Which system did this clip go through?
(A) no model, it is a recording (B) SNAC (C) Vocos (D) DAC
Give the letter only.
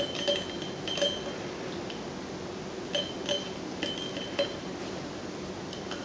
A